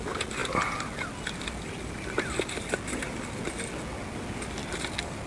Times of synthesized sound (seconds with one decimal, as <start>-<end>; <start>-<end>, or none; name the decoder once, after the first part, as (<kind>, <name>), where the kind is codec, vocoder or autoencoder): none